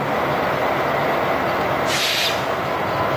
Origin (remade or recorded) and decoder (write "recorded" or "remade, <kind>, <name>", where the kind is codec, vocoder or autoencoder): recorded